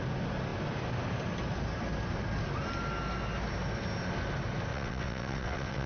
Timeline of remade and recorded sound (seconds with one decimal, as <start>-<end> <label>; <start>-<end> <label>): 0.0-4.7 recorded; 4.7-5.9 remade

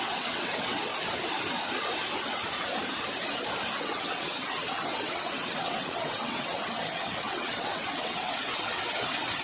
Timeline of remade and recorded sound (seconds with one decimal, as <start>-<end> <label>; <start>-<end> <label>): 0.0-0.9 remade; 0.9-3.8 recorded; 3.8-9.4 remade